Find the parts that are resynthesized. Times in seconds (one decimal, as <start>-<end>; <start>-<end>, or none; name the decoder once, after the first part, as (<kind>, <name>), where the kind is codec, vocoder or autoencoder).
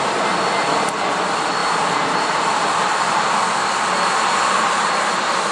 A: none